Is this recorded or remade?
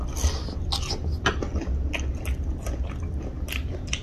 recorded